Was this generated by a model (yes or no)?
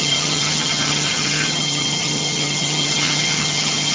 yes